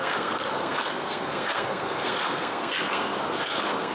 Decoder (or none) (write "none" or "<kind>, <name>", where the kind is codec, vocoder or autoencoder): codec, SNAC